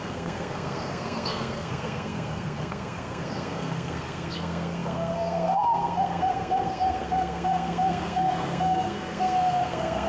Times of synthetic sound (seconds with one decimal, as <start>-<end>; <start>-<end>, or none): 0.0-10.1